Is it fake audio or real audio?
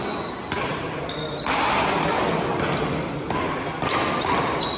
real